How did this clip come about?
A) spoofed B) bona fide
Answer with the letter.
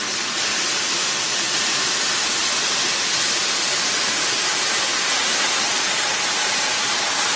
B